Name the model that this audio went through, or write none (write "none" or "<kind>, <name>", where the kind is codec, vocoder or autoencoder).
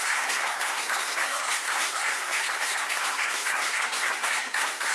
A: codec, SNAC